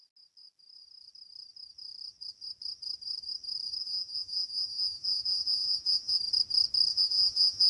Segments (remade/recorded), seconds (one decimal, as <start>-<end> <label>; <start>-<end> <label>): 0.0-3.8 recorded; 3.8-6.2 remade; 6.2-6.9 recorded; 6.9-7.7 remade